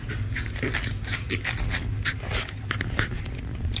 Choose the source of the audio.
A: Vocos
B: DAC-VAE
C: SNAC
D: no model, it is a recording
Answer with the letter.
D